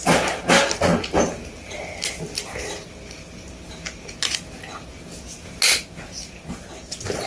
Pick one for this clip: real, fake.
real